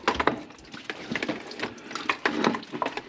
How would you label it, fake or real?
real